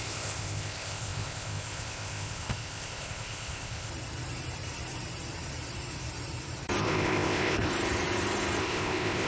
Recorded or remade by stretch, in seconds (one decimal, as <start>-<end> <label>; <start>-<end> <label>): 0.0-3.9 remade; 3.9-6.8 recorded; 6.8-7.7 remade; 7.7-8.6 recorded; 8.6-9.3 remade